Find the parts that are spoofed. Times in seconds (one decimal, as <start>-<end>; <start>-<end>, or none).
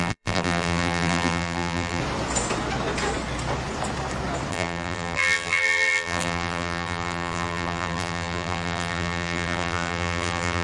0.0-2.0; 4.5-10.6